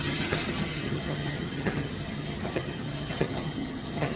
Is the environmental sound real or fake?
fake